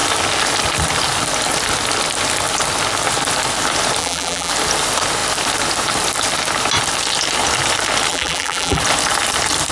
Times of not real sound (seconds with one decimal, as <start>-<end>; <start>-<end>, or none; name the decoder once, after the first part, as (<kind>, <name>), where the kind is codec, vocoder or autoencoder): 4.0-4.5 (vocoder, BigVGAN v2); 8.1-8.8